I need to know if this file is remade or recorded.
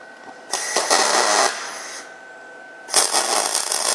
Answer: recorded